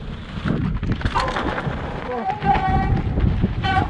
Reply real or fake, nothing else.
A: real